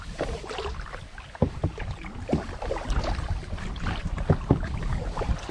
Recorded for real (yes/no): no